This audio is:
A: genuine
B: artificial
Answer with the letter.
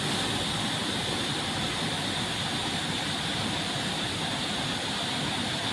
A